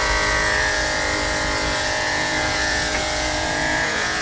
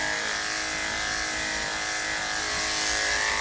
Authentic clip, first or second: second